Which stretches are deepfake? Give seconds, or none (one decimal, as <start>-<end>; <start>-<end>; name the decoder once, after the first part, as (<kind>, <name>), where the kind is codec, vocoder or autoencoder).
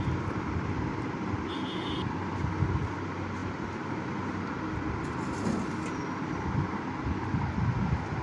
3.4-4.1 (vocoder, BigVGAN v2)